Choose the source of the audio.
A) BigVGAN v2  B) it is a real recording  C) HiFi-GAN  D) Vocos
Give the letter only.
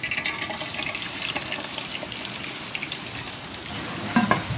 B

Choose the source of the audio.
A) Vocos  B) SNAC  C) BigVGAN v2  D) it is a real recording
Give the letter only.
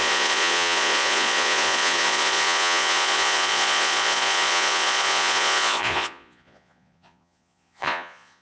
A